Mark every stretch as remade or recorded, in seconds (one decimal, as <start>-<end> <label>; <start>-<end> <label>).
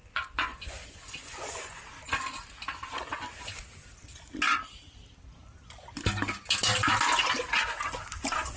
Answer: 0.0-1.8 remade; 1.8-8.6 recorded